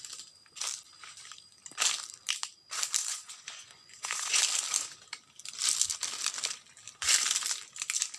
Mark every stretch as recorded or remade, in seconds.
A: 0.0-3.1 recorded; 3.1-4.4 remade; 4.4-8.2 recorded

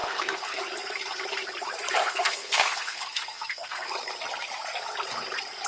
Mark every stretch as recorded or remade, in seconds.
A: 0.0-0.6 remade; 0.6-2.0 recorded; 2.0-3.9 remade; 3.9-5.7 recorded

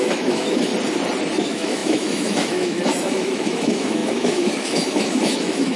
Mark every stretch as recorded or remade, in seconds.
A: 0.0-0.7 remade; 0.7-1.4 recorded; 1.4-5.8 remade

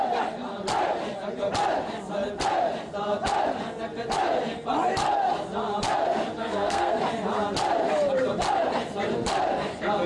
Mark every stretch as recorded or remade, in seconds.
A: 0.0-6.4 recorded; 6.4-7.0 remade; 7.0-10.1 recorded

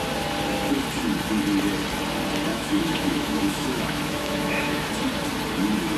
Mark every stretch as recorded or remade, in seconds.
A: 0.0-2.5 recorded; 2.5-4.9 remade; 4.9-6.0 recorded